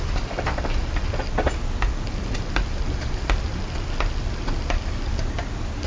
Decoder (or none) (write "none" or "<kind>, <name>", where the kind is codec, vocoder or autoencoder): none